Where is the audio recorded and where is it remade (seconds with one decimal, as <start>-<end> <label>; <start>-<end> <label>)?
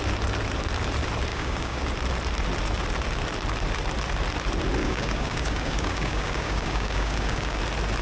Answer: 0.0-1.3 recorded; 1.3-1.8 remade; 1.8-4.8 recorded; 4.8-7.6 remade; 7.6-8.0 recorded